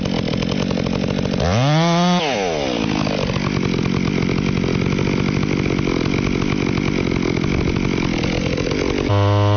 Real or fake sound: real